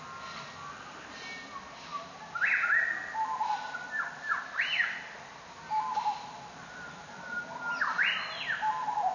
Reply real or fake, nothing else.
real